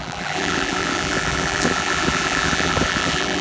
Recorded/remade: remade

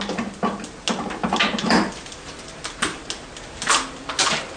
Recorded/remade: recorded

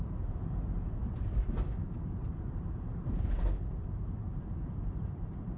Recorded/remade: remade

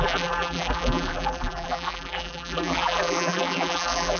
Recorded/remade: remade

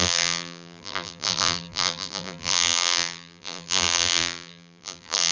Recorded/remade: remade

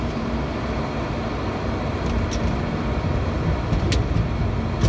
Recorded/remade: recorded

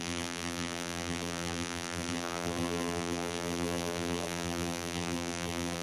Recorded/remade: remade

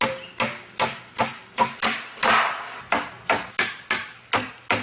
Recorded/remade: recorded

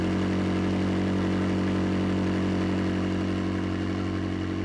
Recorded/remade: recorded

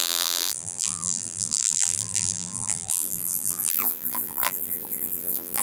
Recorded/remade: remade